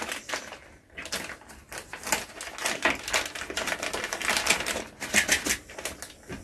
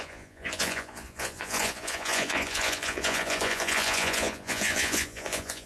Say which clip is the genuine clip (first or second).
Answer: first